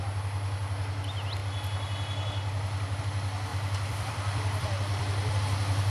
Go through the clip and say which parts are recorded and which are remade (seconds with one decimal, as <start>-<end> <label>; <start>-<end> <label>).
0.0-3.5 recorded; 3.5-5.4 remade; 5.4-5.9 recorded